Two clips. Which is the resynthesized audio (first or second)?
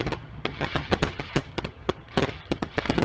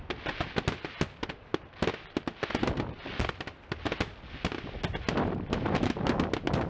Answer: first